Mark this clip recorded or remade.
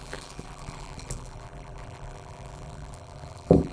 remade